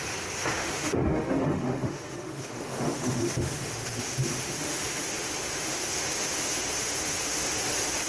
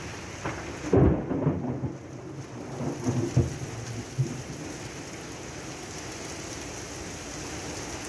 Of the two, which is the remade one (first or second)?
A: first